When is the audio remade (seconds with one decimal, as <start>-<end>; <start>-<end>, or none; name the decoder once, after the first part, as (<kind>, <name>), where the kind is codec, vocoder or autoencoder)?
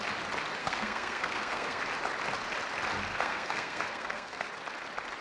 0.6-1.8 (codec, SNAC); 3.1-4.5